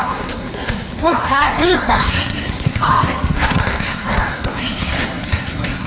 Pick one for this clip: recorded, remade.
remade